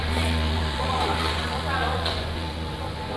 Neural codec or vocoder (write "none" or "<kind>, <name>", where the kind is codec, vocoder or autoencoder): vocoder, Vocos